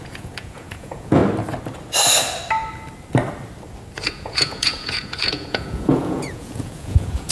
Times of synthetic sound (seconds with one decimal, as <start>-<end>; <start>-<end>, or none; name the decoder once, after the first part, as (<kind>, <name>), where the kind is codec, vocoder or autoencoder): 0.0-1.2 (vocoder, Vocos); 4.0-7.3